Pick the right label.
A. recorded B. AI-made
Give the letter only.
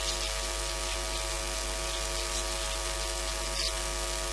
A